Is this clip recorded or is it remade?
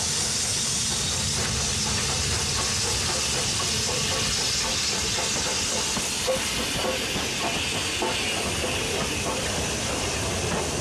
recorded